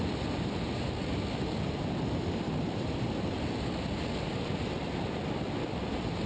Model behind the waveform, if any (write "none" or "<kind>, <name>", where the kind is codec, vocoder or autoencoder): none